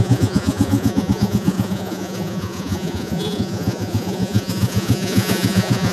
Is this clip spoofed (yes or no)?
yes